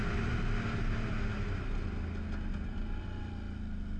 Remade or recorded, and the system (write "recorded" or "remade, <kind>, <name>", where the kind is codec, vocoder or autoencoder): recorded